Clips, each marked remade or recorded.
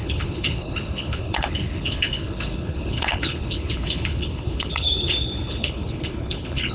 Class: remade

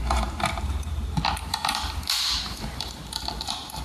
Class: remade